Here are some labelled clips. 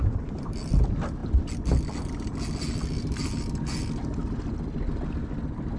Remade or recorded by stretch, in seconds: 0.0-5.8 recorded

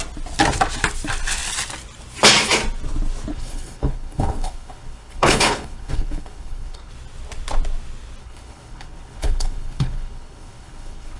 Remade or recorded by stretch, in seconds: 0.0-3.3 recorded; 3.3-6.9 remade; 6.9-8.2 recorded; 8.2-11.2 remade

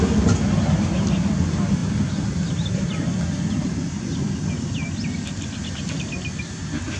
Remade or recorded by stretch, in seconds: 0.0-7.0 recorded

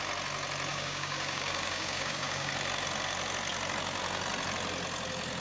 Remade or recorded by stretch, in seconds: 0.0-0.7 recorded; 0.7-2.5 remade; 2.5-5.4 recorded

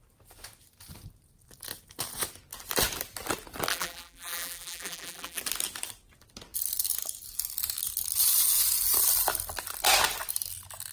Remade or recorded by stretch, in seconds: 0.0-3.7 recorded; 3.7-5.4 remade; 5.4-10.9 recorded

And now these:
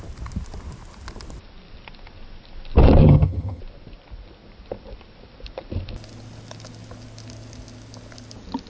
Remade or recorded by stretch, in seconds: 0.0-3.0 recorded; 3.0-3.6 remade; 3.6-8.7 recorded